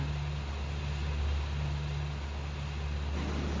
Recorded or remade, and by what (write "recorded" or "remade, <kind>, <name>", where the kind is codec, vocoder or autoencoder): recorded